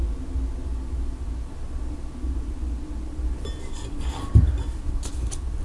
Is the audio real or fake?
real